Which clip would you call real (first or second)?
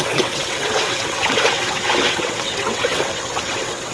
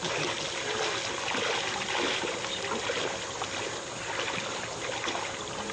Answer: second